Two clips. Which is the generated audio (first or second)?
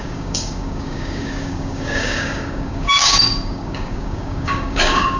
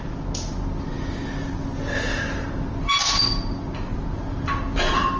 first